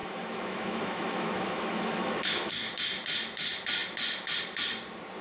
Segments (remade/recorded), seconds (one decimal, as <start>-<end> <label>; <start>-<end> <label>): 0.0-2.5 remade; 2.5-5.2 recorded